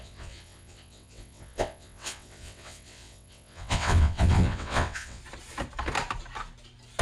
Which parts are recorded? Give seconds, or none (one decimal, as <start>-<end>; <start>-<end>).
5.2-7.0